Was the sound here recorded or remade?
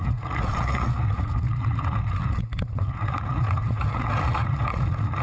remade